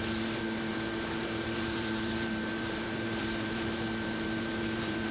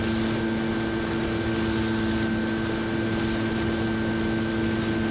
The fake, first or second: first